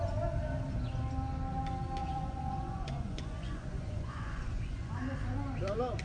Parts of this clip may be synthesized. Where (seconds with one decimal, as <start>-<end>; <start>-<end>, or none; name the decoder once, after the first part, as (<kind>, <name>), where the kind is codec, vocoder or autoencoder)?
2.0-4.9 (vocoder, Vocos)